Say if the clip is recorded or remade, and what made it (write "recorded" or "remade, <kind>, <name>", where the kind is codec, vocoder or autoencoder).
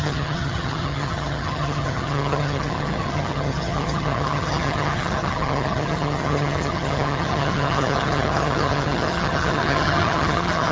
remade, vocoder, HiFi-GAN